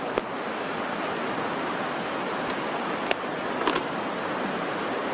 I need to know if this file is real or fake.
real